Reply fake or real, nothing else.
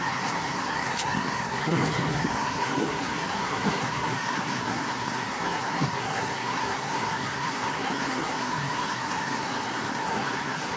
fake